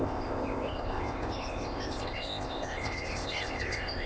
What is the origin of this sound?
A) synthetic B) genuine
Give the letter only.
A